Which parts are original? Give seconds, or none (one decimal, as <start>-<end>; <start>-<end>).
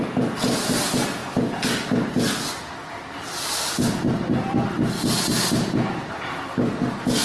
0.0-7.2